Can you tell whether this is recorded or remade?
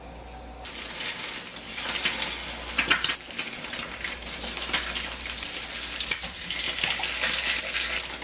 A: recorded